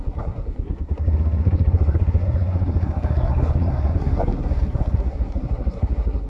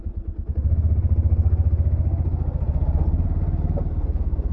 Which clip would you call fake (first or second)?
first